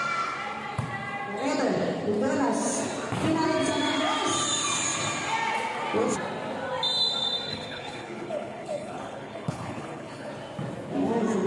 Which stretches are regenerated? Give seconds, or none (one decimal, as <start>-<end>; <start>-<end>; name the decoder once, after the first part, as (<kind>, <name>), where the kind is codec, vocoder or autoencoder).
7.5-10.3 (codec, HILCodec)